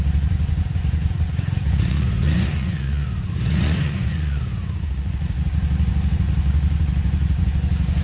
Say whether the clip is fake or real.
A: fake